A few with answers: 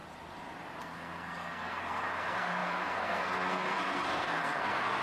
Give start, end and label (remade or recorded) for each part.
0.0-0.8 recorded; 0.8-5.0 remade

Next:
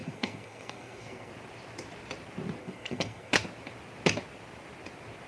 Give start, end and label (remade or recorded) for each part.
0.0-1.3 remade; 1.3-2.6 recorded; 2.6-3.3 remade; 3.3-5.3 recorded

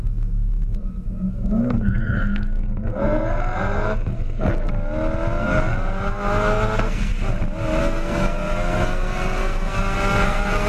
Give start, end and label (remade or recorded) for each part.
0.0-4.7 remade; 4.7-5.4 recorded; 5.4-7.1 remade; 7.1-7.8 recorded; 7.8-10.7 remade

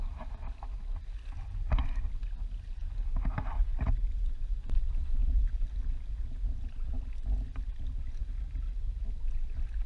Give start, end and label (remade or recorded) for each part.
0.0-5.2 recorded; 5.2-5.7 remade; 5.7-8.2 recorded; 8.2-9.0 remade; 9.0-9.9 recorded

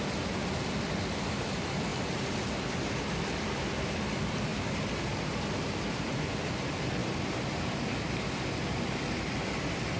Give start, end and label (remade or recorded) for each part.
0.0-7.0 remade; 7.0-9.2 recorded; 9.2-10.0 remade

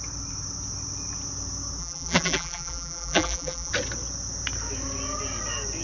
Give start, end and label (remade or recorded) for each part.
0.0-1.8 recorded; 1.8-3.7 remade; 3.7-5.8 recorded

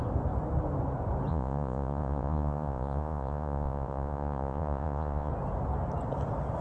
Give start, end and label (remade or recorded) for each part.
0.0-1.3 recorded; 1.3-5.3 remade; 5.3-6.6 recorded

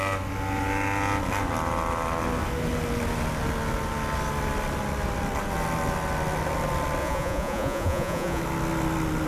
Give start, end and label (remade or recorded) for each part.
0.0-7.0 recorded; 7.0-8.4 remade; 8.4-9.3 recorded